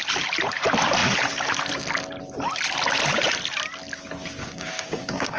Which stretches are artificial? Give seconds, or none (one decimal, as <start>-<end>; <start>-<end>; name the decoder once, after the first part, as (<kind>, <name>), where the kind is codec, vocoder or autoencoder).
4.4-5.4 (codec, DAC)